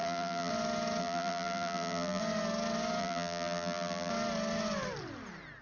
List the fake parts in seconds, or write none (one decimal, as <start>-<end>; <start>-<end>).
0.0-0.5; 1.0-2.2; 3.0-4.1